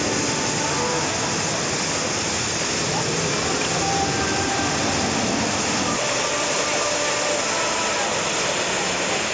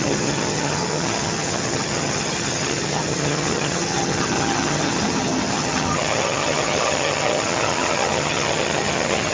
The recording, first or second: first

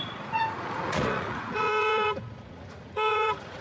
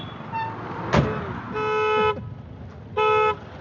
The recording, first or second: second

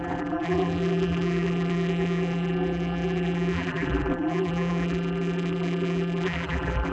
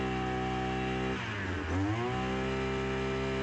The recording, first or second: second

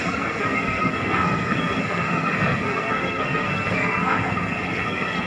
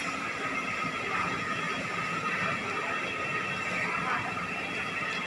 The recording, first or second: second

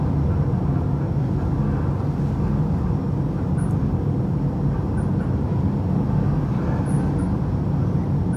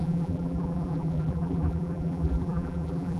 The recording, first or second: first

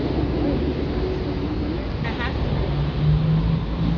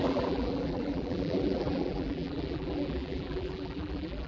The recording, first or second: first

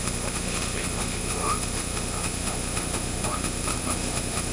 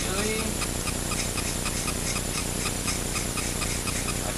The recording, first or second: second